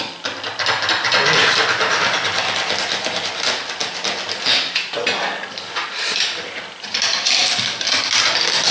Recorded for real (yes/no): yes